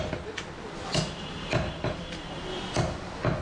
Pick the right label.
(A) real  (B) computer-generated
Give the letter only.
A